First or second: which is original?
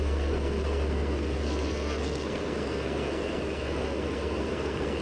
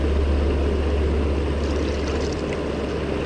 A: second